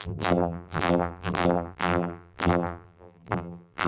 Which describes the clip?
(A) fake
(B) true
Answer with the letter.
A